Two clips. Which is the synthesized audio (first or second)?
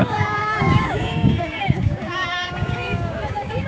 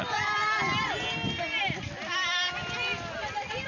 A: first